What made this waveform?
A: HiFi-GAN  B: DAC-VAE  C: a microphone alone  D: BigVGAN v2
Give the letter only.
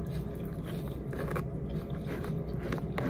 C